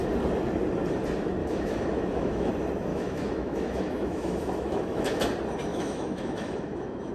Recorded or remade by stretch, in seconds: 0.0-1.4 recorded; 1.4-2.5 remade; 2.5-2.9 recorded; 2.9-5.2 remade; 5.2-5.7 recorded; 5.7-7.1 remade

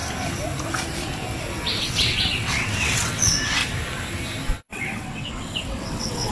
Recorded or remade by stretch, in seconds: 0.0-1.8 recorded; 1.8-3.6 remade; 3.6-4.6 recorded; 4.6-6.3 remade

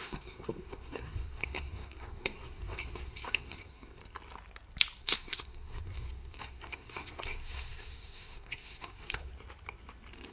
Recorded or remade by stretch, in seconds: 0.0-4.0 remade; 4.0-5.0 recorded; 5.0-9.3 remade; 9.3-10.3 recorded

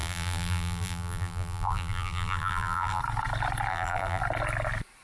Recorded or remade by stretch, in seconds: 0.0-3.0 remade; 3.0-3.7 recorded; 3.7-4.2 remade; 4.2-5.0 recorded

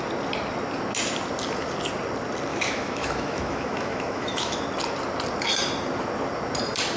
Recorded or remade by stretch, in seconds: 0.0-2.5 recorded; 2.5-4.6 remade; 4.6-7.0 recorded

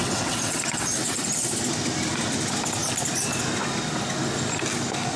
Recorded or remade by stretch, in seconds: 0.0-1.2 remade; 1.2-5.2 recorded

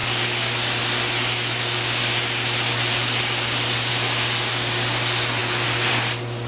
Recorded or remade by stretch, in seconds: 0.0-6.5 recorded

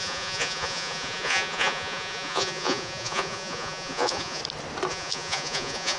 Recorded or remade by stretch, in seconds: 0.0-4.4 remade; 4.4-4.9 recorded; 4.9-6.0 remade